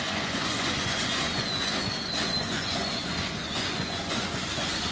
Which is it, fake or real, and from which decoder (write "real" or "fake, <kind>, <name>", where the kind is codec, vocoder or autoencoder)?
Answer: fake, vocoder, Vocos